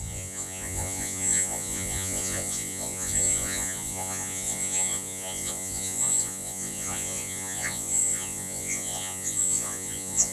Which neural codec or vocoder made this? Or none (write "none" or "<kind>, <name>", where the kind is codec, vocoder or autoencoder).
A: vocoder, Vocos